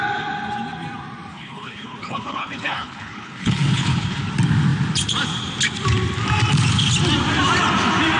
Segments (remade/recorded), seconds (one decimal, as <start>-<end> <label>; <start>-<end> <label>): 0.0-1.3 recorded; 1.3-4.2 remade; 4.2-8.2 recorded